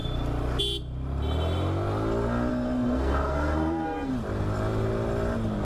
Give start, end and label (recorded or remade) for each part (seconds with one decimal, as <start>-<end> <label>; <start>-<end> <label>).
0.0-2.5 recorded; 2.5-4.1 remade; 4.1-5.6 recorded